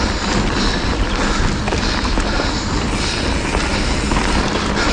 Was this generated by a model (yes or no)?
no